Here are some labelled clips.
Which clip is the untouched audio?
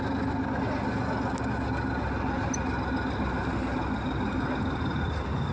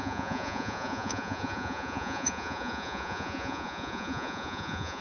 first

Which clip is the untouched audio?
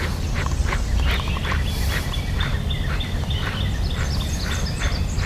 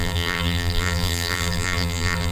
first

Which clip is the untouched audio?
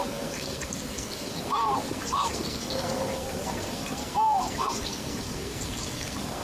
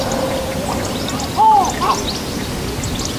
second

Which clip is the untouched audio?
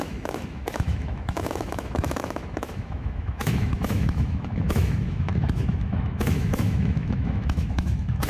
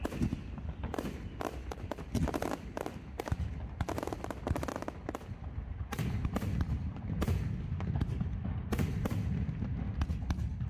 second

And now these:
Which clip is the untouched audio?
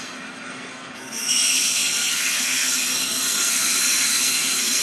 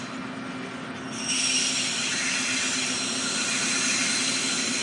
second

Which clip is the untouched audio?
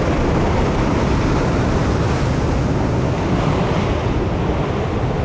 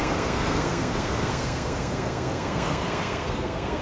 first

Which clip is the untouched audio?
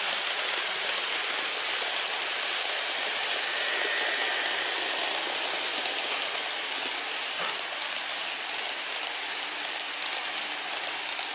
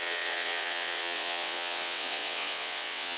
first